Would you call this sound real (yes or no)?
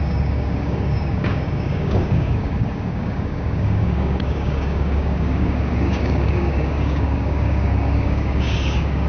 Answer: no